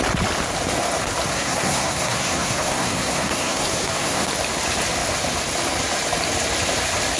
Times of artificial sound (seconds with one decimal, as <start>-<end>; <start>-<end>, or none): 1.3-4.3